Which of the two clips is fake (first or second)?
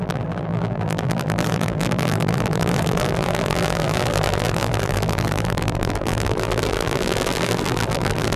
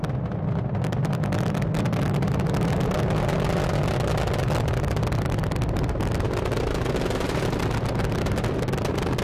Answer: first